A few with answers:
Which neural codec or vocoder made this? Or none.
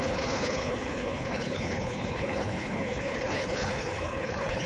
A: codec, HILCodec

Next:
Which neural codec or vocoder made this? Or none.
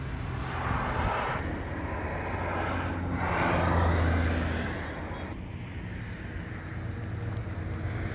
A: none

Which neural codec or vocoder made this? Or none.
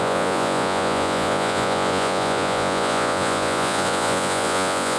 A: vocoder, Vocos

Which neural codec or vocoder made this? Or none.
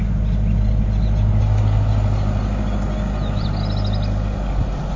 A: none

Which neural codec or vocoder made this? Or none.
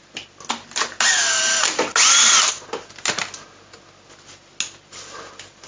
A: none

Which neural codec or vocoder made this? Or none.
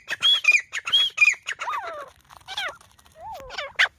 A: none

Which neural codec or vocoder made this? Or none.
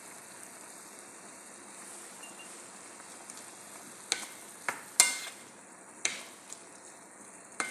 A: none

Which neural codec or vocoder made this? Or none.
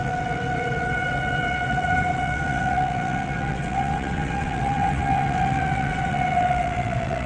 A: vocoder, WaveNeXt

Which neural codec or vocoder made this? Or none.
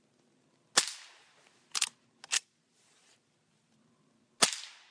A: none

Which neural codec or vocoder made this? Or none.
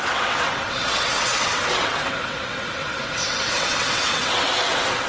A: vocoder, WaveNeXt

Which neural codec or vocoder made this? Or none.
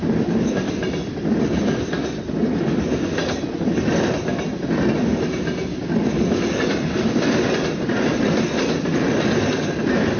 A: none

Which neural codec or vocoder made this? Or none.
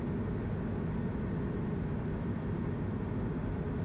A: none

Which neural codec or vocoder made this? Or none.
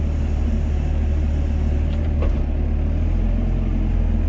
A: none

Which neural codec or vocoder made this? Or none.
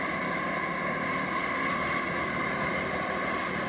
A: none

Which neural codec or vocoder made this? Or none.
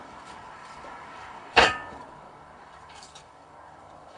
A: codec, DAC